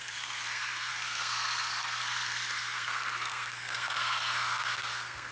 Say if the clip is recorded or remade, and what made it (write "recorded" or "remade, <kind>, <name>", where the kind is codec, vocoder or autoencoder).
remade, codec, SNAC